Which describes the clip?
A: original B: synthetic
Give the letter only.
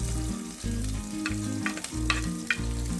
A